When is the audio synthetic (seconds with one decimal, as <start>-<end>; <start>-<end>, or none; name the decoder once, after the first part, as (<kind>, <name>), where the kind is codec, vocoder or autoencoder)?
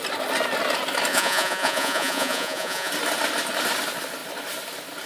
1.1-2.9 (vocoder, Vocos)